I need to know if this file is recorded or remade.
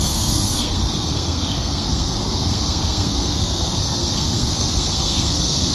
remade